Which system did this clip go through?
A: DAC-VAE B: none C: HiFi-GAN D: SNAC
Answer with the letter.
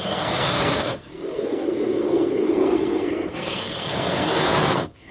D